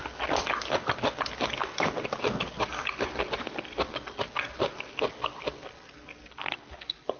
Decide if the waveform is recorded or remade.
recorded